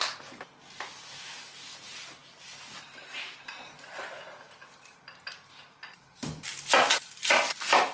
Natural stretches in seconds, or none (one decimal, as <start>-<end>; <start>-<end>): 0.0-7.9